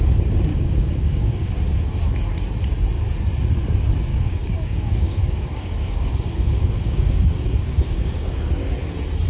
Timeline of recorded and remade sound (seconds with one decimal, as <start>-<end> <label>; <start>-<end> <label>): 0.0-0.5 recorded; 0.5-1.5 remade; 1.5-4.1 recorded; 4.1-8.5 remade; 8.5-9.3 recorded